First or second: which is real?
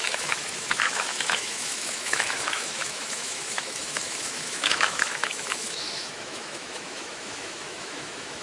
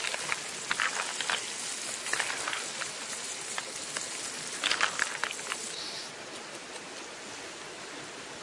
second